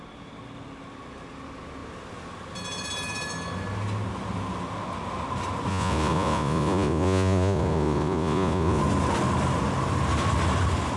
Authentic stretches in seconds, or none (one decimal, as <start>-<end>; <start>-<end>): 0.0-5.7; 8.8-11.0

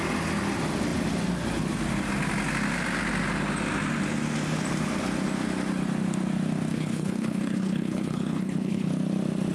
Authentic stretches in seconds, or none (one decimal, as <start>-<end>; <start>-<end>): 0.0-6.7; 8.9-9.5

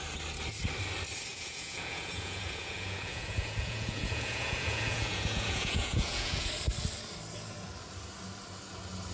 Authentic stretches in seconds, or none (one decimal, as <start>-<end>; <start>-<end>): 0.0-1.3; 6.5-9.1

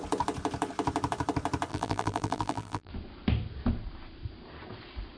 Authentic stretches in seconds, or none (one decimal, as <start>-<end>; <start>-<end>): 0.0-1.7; 2.9-5.2

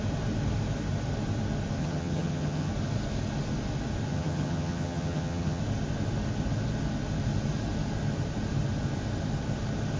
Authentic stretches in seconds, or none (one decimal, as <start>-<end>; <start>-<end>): 0.0-1.8; 2.7-4.1; 5.6-10.0

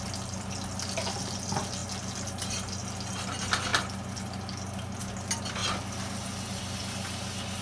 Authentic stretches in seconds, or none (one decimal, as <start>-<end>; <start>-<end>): 0.0-7.6